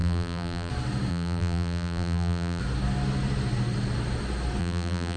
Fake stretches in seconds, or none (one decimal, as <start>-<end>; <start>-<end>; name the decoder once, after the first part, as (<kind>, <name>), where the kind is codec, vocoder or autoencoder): 0.0-0.7 (vocoder, BigVGAN v2); 1.1-2.6; 4.6-5.2